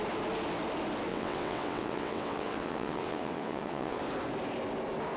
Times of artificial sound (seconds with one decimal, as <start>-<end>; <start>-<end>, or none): 1.1-4.0